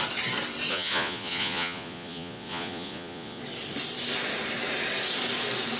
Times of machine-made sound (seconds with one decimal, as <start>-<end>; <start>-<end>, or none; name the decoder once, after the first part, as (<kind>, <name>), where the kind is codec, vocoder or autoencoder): 0.7-3.4 (vocoder, Vocos)

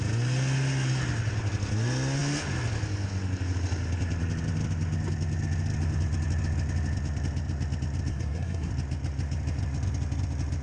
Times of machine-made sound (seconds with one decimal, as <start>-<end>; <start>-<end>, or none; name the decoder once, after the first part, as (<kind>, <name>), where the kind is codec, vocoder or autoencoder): 8.1-8.7 (codec, SNAC)